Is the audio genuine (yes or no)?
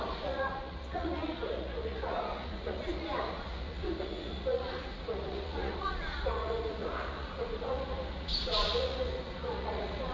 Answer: no